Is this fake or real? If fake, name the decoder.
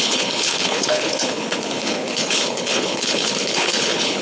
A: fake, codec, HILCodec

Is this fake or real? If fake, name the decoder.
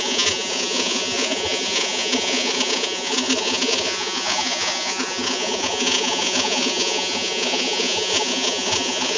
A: fake, vocoder, Vocos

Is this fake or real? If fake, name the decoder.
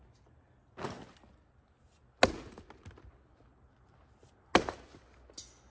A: real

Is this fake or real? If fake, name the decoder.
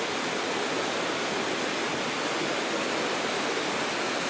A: real